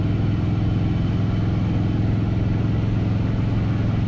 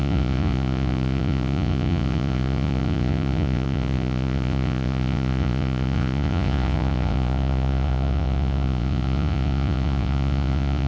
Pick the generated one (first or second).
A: second